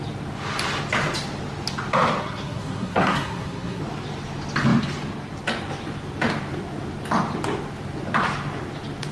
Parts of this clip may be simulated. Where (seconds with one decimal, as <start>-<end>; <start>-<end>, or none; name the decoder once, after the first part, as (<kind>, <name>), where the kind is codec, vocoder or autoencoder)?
2.2-3.8 (codec, SNAC)